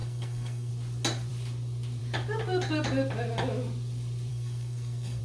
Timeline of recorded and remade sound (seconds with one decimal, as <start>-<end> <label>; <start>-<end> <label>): 0.0-0.7 remade; 0.7-4.3 recorded; 4.3-5.2 remade